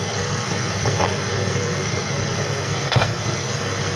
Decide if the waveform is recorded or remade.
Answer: remade